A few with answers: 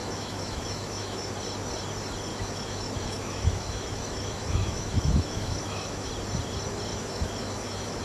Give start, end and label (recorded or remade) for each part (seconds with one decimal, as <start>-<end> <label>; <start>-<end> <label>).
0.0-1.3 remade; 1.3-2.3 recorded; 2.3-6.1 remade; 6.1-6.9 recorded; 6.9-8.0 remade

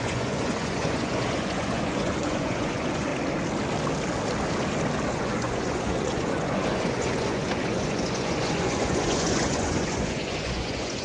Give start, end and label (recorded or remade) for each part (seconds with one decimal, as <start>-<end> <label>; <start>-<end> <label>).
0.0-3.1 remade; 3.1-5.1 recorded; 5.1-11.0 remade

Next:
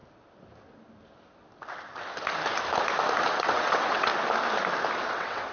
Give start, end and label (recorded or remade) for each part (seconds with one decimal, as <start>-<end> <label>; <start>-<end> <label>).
0.0-3.3 recorded; 3.3-4.1 remade; 4.1-5.0 recorded; 5.0-5.5 remade